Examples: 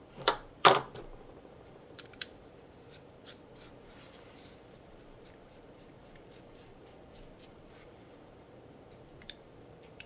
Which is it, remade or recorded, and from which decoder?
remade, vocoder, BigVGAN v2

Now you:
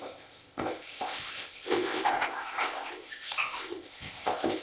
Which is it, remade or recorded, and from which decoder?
remade, codec, ZipCodec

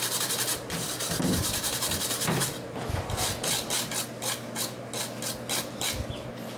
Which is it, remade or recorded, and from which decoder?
recorded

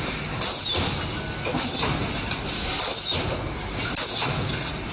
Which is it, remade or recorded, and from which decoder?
recorded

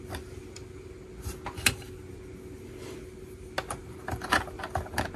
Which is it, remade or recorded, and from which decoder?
recorded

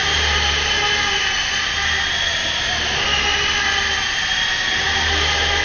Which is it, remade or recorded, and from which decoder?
recorded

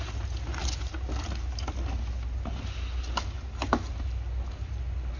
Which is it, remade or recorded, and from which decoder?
recorded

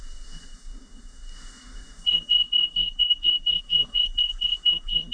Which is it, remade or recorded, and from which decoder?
remade, codec, SNAC